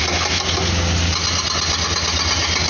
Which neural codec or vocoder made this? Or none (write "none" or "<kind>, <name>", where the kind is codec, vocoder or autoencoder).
none